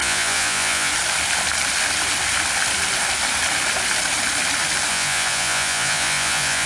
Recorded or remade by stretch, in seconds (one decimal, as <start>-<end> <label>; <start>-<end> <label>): 0.0-0.9 remade; 0.9-4.9 recorded; 4.9-6.7 remade

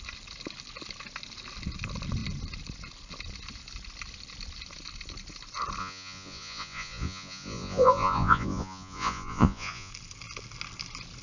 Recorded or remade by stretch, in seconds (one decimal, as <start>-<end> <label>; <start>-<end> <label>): 0.0-5.8 recorded; 5.8-9.9 remade; 9.9-11.2 recorded

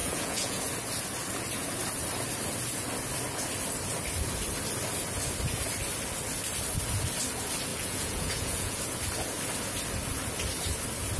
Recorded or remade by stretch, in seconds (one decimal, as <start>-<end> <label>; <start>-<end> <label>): 0.0-0.6 remade; 0.6-7.7 recorded; 7.7-8.8 remade; 8.8-11.2 recorded

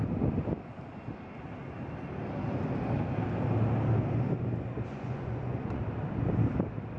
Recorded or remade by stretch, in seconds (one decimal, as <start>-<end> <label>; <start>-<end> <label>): 0.0-4.9 recorded; 4.9-5.8 remade; 5.8-7.0 recorded

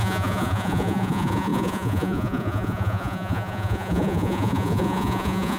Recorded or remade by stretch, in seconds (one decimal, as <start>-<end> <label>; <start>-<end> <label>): 0.0-5.6 remade

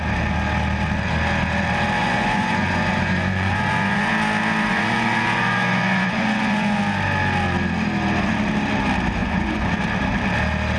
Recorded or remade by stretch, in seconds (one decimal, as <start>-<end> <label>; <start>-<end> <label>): 0.0-2.0 recorded; 2.0-4.1 remade; 4.1-4.7 recorded; 4.7-6.8 remade; 6.8-9.2 recorded; 9.2-9.7 remade; 9.7-10.8 recorded